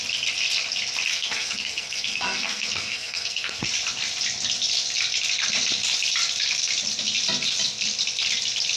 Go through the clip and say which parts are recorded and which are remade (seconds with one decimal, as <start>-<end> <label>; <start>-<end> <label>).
0.0-1.1 recorded; 1.1-3.7 remade; 3.7-8.8 recorded